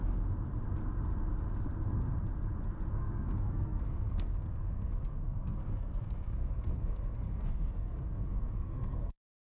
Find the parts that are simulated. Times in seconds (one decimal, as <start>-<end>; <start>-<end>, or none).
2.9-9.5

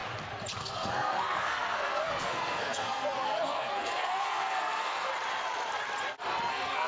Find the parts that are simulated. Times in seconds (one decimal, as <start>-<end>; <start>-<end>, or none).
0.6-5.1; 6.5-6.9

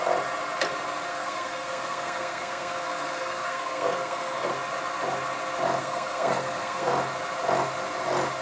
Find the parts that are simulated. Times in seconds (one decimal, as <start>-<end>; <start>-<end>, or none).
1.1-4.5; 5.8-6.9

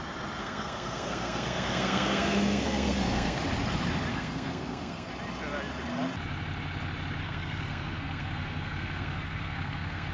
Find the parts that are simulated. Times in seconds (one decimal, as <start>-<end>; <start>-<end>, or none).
0.4-3.4; 4.1-5.1; 7.2-10.1

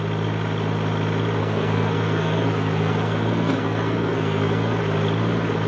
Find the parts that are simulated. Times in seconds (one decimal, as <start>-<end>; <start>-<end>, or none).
1.4-4.8

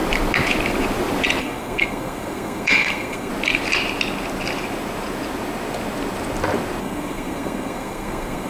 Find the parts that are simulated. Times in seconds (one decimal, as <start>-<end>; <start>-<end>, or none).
1.4-3.3; 6.8-8.5

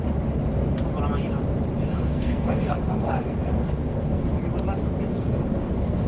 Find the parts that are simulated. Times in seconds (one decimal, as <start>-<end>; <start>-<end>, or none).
1.9-4.4; 5.1-6.1

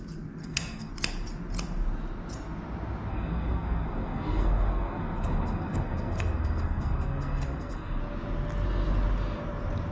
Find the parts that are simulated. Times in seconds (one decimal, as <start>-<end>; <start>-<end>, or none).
0.4-0.9; 3.1-8.0